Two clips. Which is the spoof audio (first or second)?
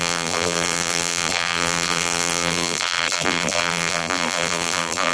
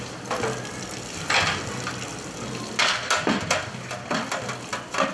first